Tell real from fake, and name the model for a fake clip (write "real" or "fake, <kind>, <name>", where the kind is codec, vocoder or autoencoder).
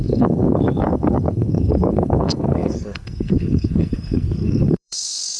fake, codec, SNAC